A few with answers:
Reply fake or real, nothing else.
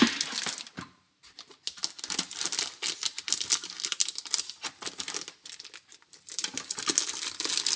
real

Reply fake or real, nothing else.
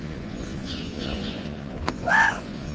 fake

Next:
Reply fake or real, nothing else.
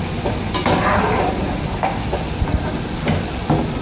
real